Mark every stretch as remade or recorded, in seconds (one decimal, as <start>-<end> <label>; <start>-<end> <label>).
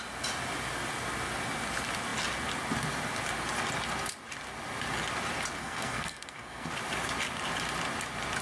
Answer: 0.0-5.6 recorded; 5.6-6.7 remade; 6.7-8.4 recorded